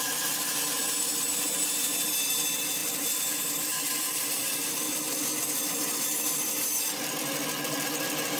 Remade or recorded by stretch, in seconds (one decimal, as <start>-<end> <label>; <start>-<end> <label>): 0.0-8.4 remade